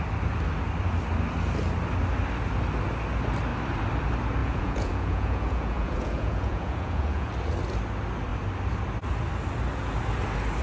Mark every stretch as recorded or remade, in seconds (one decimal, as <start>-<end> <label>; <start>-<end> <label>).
0.0-4.4 recorded; 4.4-7.3 remade; 7.3-10.6 recorded